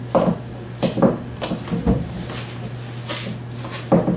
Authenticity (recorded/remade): recorded